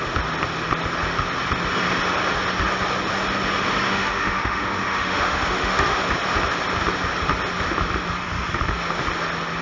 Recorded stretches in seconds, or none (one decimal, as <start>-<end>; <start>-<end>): 0.0-3.9; 6.0-9.6